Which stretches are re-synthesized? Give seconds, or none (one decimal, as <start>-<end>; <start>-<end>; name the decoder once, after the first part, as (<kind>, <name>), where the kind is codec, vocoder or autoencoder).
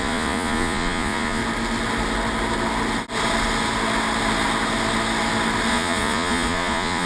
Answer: 0.0-1.4 (vocoder, Vocos); 5.7-7.1